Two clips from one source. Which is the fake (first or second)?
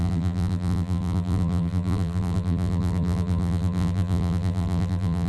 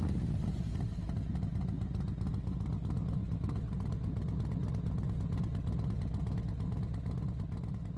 first